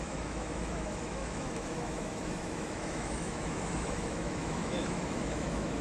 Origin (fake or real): fake